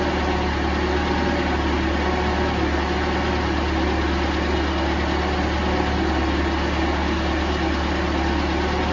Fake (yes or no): no